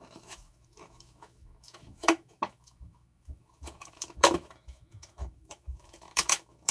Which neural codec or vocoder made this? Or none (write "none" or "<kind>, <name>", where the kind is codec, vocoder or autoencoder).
autoencoder, DAC-VAE